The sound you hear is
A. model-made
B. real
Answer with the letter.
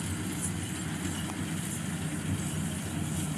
B